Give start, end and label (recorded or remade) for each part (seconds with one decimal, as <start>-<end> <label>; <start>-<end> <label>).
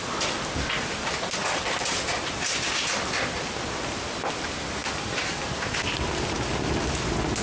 0.0-7.4 recorded